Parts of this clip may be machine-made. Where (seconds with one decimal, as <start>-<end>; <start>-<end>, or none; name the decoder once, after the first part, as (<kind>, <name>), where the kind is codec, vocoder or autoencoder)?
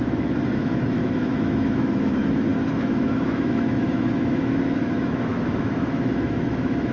0.0-6.9 (autoencoder, DAC-VAE)